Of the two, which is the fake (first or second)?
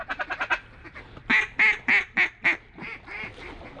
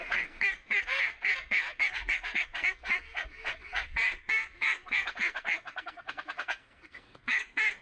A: second